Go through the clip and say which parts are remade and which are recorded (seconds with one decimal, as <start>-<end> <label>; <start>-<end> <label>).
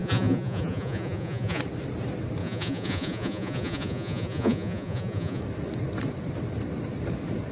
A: 0.0-1.6 remade; 1.6-2.4 recorded; 2.4-5.4 remade; 5.4-7.5 recorded